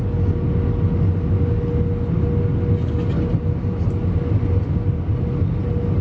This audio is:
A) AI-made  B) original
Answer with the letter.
B